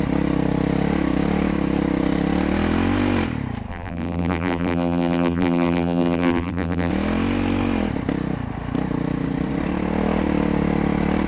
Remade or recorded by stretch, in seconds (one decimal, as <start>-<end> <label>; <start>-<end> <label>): 0.0-3.7 recorded; 3.7-6.9 remade; 6.9-11.3 recorded